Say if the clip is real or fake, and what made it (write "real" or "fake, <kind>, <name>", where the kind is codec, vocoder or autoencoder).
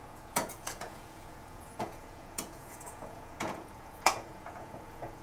fake, vocoder, Vocos